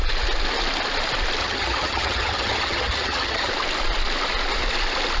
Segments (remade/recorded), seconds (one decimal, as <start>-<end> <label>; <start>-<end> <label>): 0.0-1.4 recorded; 1.4-3.5 remade; 3.5-5.2 recorded